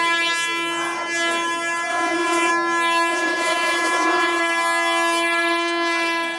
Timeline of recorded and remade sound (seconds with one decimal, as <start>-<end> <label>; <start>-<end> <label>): 0.0-1.9 recorded; 1.9-2.5 remade; 2.5-3.1 recorded; 3.1-4.4 remade; 4.4-6.4 recorded

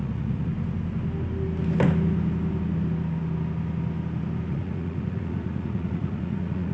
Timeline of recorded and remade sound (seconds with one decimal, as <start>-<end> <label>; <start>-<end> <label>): 0.0-0.5 remade; 0.5-4.5 recorded; 4.5-6.7 remade